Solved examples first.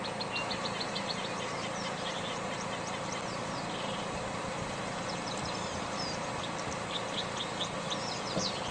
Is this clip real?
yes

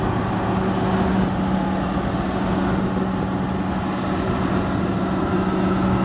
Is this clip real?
yes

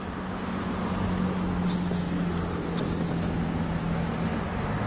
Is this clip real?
yes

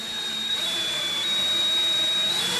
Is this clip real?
no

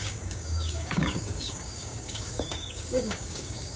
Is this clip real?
no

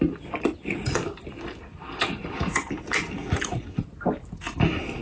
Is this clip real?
yes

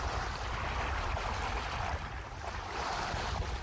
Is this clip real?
yes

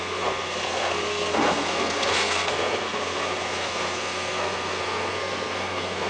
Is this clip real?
no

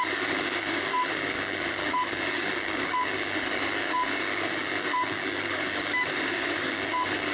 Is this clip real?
no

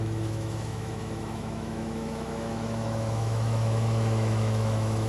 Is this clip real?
no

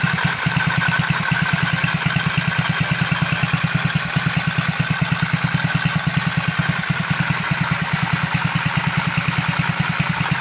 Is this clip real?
yes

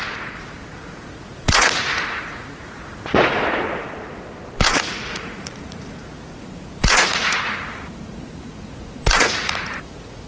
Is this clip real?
no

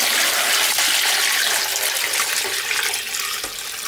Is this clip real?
yes